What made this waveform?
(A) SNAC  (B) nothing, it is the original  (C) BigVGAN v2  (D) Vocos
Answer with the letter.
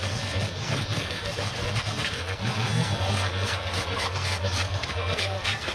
A